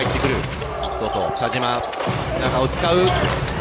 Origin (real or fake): fake